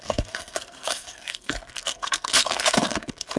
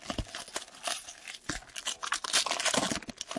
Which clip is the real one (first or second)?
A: second